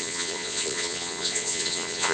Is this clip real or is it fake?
fake